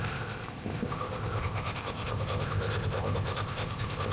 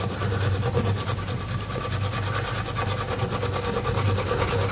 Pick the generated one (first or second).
first